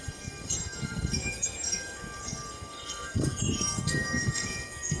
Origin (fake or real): fake